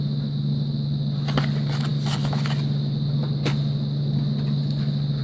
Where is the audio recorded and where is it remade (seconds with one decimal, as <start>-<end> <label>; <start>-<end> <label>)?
0.0-5.2 recorded